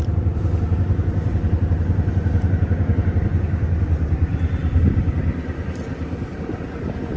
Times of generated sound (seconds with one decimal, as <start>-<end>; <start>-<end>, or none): 0.0-4.6; 5.2-5.9